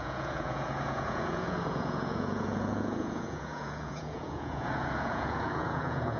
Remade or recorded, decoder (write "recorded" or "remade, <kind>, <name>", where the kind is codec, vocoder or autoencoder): remade, vocoder, Vocos